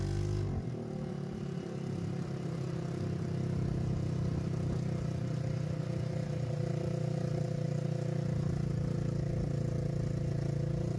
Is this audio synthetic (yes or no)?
no